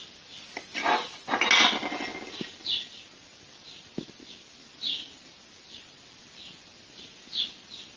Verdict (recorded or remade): recorded